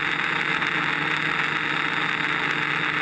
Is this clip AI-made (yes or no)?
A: no